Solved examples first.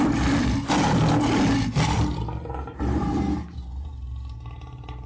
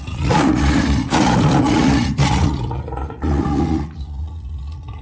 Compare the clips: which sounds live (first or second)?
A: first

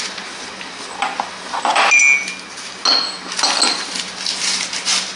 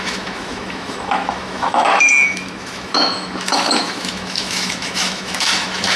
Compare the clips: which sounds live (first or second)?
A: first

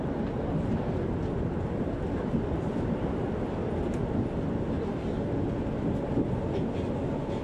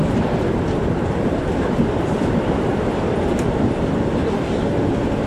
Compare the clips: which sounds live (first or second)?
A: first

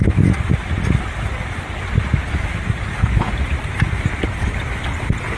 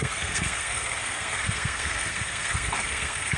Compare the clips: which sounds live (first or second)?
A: first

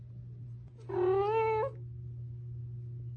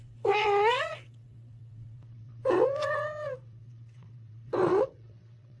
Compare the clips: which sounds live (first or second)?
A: first